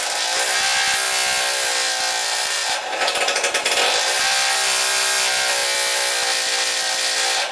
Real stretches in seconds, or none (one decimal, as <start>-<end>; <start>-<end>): 0.0-2.4; 3.2-7.5